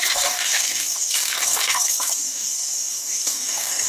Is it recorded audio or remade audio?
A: remade